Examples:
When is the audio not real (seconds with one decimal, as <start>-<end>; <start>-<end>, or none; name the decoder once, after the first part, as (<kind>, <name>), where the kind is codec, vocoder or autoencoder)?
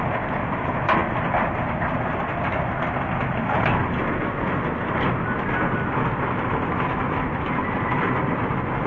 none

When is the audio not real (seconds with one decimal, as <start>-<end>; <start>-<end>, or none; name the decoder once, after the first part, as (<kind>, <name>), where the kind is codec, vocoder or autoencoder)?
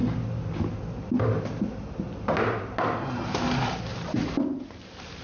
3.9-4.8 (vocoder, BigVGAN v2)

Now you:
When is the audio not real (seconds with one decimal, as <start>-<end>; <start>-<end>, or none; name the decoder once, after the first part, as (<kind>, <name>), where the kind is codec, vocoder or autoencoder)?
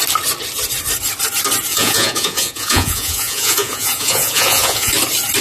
1.7-4.9 (vocoder, Vocos)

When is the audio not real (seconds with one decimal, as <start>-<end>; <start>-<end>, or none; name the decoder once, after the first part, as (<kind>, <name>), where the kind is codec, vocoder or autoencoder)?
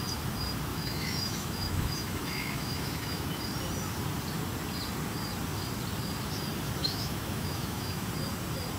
0.7-3.4 (autoencoder, DAC-VAE); 6.8-8.1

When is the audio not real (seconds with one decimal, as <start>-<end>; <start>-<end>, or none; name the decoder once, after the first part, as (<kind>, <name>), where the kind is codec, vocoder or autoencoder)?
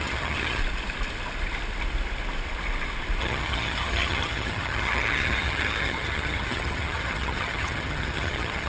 0.0-0.6 (vocoder, HiFi-GAN); 3.2-8.7